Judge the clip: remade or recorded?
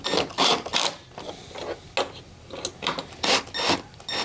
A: recorded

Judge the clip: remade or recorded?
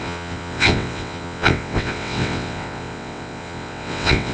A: remade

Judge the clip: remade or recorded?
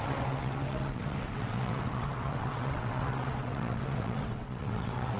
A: remade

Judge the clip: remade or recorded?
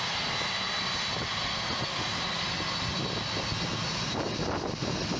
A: recorded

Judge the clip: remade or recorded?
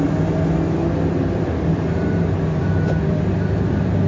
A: recorded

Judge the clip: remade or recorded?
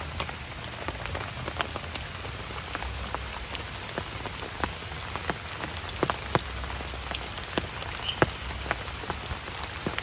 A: recorded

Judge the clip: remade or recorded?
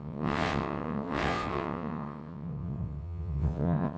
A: remade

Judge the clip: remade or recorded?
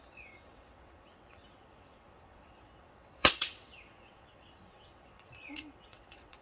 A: remade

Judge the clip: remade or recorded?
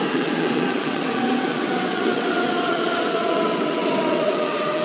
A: remade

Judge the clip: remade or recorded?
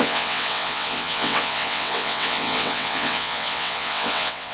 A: remade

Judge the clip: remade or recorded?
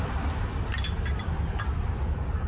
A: recorded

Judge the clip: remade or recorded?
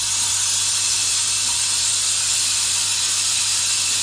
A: recorded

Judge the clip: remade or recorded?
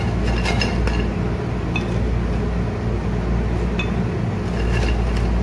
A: recorded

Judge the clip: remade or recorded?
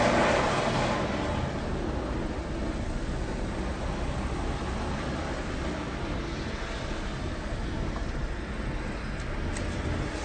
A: recorded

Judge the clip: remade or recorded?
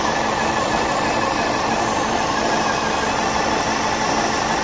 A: recorded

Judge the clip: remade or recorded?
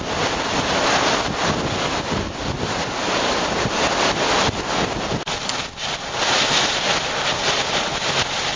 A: recorded